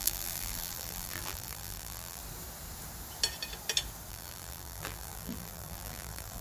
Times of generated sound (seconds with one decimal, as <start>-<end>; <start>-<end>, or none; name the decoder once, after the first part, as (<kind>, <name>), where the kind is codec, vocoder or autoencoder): 0.0-2.2 (vocoder, BigVGAN v2); 4.1-6.4